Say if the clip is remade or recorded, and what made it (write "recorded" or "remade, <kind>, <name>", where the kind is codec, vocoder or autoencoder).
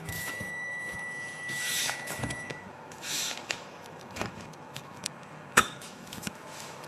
remade, autoencoder, DAC-VAE